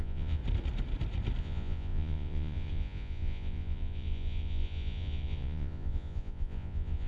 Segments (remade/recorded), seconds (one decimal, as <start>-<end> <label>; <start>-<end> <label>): 0.0-0.4 remade; 0.4-1.4 recorded; 1.4-7.1 remade